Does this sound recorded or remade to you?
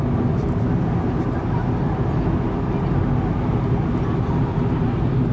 recorded